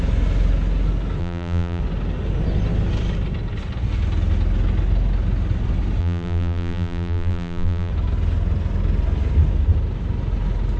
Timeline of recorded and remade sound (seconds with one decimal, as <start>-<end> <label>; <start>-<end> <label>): 0.0-1.2 recorded; 1.2-1.8 remade; 1.8-6.0 recorded; 6.0-7.9 remade; 7.9-10.8 recorded